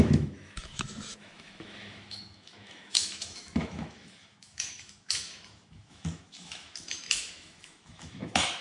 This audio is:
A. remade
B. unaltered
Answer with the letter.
A